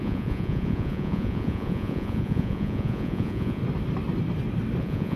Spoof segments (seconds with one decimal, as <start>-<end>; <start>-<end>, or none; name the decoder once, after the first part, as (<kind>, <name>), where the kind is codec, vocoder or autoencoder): 0.0-3.6 (vocoder, Vocos); 4.8-5.2